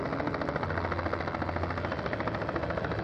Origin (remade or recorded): recorded